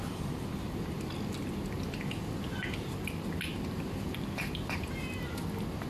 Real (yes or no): yes